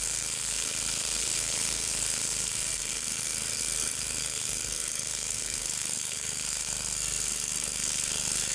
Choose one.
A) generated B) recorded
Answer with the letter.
A